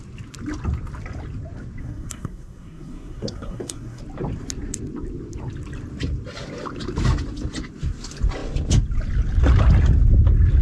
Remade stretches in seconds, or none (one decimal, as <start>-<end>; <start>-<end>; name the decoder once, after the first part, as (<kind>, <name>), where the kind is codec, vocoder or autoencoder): 1.8-4.0 (codec, SNAC)